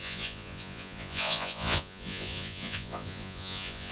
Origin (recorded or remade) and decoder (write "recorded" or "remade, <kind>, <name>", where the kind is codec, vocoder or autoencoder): remade, vocoder, Vocos